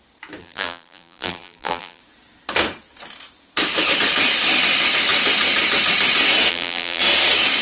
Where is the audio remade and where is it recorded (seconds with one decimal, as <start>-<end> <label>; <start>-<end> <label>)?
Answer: 0.0-0.4 recorded; 0.4-2.0 remade; 2.0-6.5 recorded; 6.5-7.0 remade; 7.0-7.6 recorded

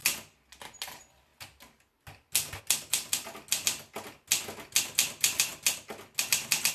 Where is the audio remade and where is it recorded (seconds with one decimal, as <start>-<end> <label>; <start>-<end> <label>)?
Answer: 0.0-6.7 recorded

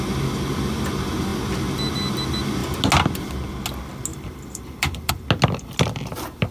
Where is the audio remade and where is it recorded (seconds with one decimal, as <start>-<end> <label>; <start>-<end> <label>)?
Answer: 0.0-4.1 recorded; 4.1-5.1 remade; 5.1-6.5 recorded

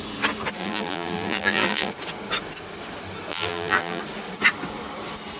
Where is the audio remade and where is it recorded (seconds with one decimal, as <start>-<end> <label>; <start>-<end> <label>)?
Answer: 0.0-0.6 recorded; 0.6-1.9 remade; 1.9-3.3 recorded; 3.3-4.0 remade; 4.0-5.4 recorded